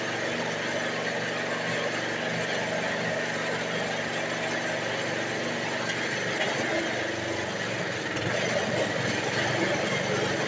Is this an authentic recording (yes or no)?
yes